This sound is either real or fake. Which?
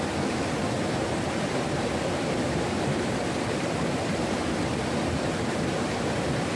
fake